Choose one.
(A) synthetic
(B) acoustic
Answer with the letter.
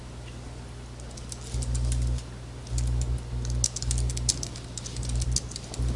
B